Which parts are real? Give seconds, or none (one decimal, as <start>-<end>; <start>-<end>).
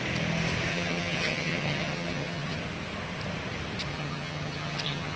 0.0-0.7; 2.6-3.9